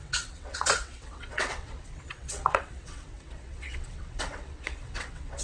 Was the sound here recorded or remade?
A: remade